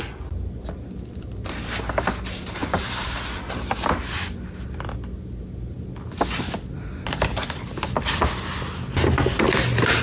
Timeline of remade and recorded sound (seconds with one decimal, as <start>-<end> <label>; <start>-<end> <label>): 0.0-10.0 recorded